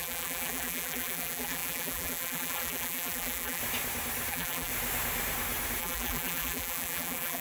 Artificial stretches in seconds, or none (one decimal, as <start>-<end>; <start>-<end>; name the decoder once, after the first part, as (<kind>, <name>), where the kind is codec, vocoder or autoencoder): 0.0-3.6 (vocoder, BigVGAN v2); 4.3-4.7; 5.8-7.4